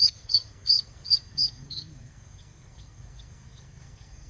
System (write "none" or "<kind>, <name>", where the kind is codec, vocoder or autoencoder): codec, SNAC